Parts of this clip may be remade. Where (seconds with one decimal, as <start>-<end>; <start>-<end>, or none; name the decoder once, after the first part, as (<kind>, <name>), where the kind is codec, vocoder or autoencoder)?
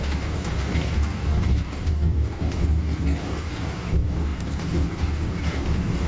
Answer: 0.0-6.1 (codec, DAC)